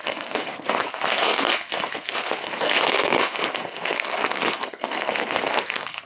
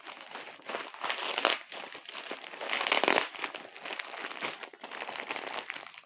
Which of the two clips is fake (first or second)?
first